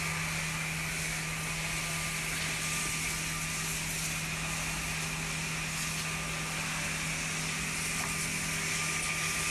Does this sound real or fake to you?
real